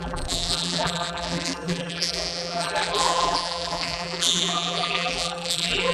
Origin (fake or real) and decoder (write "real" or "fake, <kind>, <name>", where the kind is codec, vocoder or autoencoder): fake, vocoder, BigVGAN v2